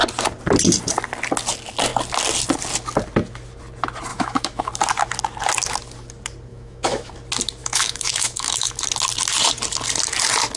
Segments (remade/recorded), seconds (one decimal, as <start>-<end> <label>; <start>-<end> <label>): 0.0-4.1 recorded; 4.1-4.7 remade; 4.7-6.5 recorded; 6.5-7.1 remade; 7.1-7.6 recorded; 7.6-8.7 remade; 8.7-10.6 recorded